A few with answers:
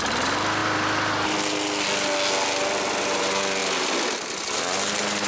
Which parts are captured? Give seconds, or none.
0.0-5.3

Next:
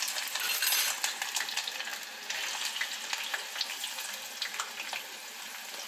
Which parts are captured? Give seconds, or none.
0.0-5.9

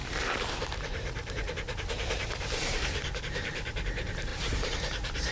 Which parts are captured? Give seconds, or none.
none

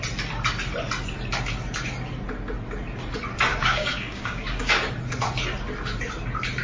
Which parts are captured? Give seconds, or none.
0.0-3.5; 4.9-6.6

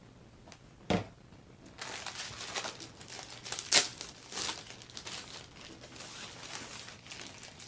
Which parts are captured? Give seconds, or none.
0.0-7.7

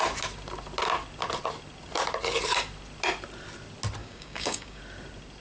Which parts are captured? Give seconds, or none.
0.0-4.0; 4.8-5.4